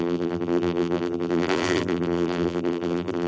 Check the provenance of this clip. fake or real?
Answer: fake